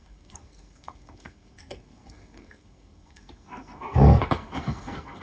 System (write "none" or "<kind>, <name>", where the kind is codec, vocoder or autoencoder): codec, SNAC